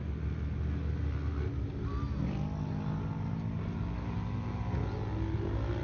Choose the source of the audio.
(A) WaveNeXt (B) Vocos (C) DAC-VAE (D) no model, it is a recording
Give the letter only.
D